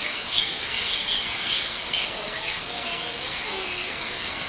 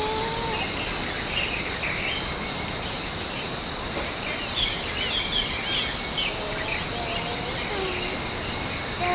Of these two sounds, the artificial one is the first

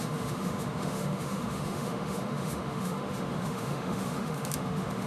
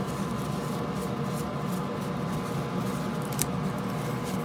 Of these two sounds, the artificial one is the first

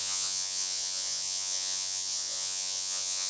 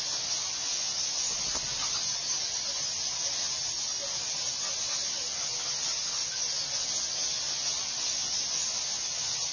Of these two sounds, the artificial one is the first